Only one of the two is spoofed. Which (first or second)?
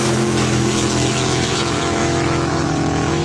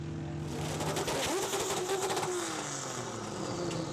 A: first